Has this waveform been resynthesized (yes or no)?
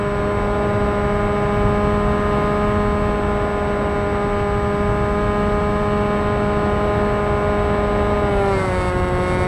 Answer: no